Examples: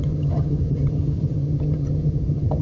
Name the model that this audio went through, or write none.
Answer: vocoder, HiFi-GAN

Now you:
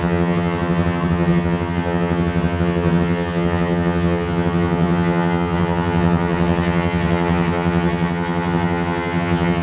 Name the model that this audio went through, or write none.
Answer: vocoder, HiFi-GAN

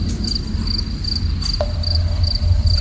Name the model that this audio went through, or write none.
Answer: none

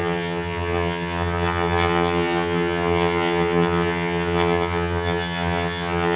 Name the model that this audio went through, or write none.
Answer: vocoder, HiFi-GAN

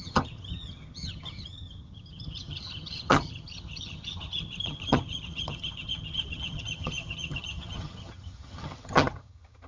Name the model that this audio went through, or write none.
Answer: vocoder, HiFi-GAN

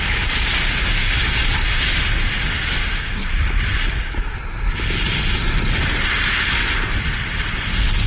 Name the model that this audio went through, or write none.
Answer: none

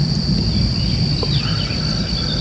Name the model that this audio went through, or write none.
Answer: none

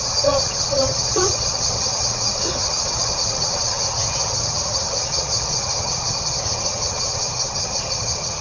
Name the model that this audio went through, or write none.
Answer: vocoder, HiFi-GAN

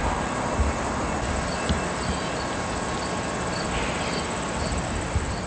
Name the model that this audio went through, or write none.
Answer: none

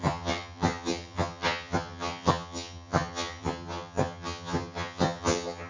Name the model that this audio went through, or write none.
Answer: vocoder, HiFi-GAN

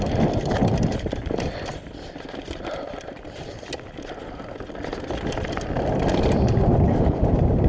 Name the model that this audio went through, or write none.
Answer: none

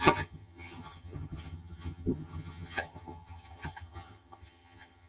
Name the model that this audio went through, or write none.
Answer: vocoder, HiFi-GAN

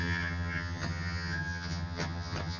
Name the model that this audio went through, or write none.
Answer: vocoder, HiFi-GAN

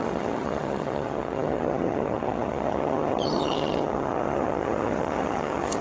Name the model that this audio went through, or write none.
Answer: vocoder, HiFi-GAN